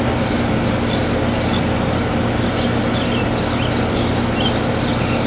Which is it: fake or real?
real